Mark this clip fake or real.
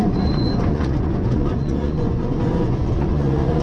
fake